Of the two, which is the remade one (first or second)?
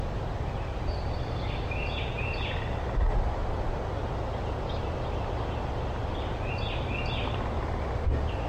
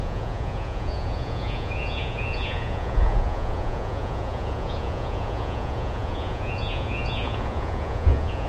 second